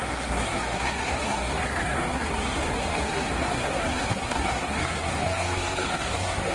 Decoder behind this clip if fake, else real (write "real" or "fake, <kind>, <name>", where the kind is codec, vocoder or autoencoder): fake, codec, SNAC